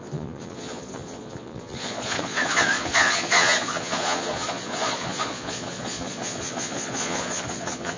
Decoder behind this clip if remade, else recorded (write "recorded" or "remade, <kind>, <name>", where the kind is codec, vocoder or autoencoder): remade, vocoder, Vocos